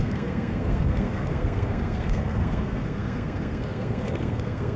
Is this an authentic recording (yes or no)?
no